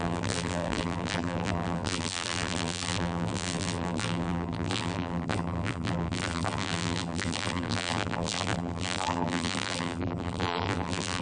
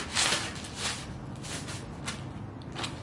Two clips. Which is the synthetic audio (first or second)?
first